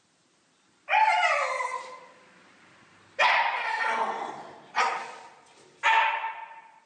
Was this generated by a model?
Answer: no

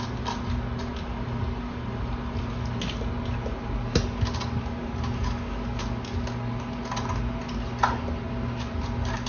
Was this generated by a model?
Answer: no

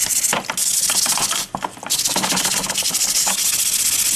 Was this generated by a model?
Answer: no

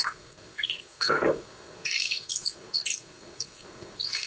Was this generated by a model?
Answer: yes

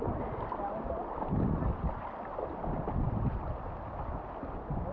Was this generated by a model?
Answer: no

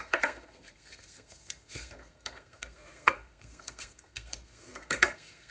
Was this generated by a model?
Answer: yes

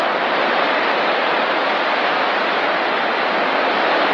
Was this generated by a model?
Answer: no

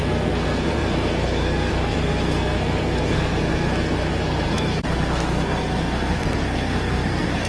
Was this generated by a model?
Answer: yes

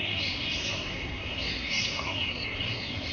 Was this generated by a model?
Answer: yes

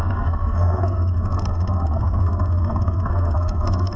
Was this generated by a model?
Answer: yes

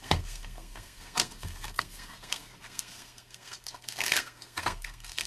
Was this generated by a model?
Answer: yes